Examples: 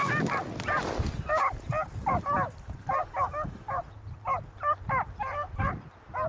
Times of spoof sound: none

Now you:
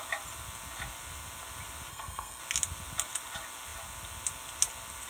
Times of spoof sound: 1.9-2.4 (codec, SNAC)

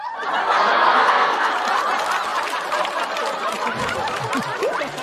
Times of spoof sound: 0.4-1.5 (codec, SNAC)

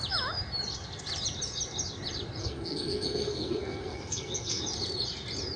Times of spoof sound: 2.4-4.6 (codec, SNAC)

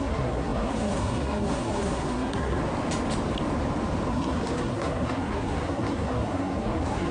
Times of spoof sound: 0.0-2.6 (codec, SNAC); 4.1-7.1

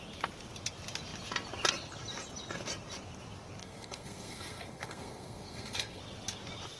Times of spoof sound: 3.6-6.0 (codec, SNAC)